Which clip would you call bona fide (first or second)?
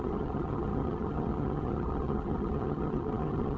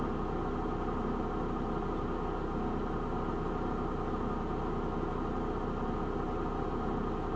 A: second